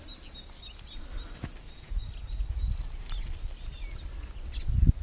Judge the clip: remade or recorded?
recorded